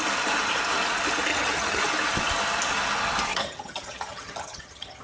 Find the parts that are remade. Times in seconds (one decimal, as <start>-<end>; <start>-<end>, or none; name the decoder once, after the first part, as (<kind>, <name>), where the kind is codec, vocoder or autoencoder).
1.3-1.8 (vocoder, HiFi-GAN); 3.3-5.0

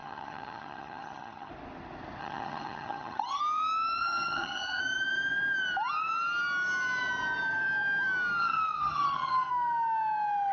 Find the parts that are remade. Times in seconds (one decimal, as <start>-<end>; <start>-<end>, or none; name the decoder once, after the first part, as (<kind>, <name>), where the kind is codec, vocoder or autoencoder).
0.0-1.5 (vocoder, HiFi-GAN); 2.2-3.4; 4.0-4.8; 8.4-9.5

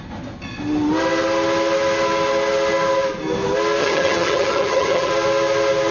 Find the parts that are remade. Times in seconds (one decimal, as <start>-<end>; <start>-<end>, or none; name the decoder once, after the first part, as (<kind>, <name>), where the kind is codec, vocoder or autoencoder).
3.8-5.1 (vocoder, HiFi-GAN)

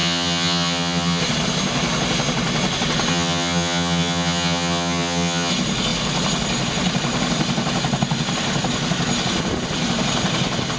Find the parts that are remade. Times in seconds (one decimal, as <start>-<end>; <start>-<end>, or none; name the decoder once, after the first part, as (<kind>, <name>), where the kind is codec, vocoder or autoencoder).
0.0-1.2 (vocoder, HiFi-GAN); 3.1-5.5

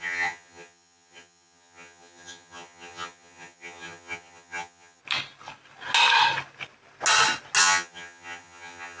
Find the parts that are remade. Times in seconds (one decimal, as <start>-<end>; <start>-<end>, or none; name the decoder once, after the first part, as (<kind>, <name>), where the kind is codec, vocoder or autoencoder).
0.0-5.0 (vocoder, HiFi-GAN); 7.6-9.0

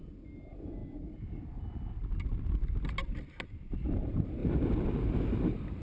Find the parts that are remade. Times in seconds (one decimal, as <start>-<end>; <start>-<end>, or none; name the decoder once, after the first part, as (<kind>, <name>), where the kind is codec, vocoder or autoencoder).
none

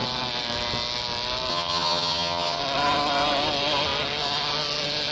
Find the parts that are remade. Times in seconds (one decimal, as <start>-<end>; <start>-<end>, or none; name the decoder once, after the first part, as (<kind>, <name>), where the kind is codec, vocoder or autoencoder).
1.5-2.6 (vocoder, HiFi-GAN)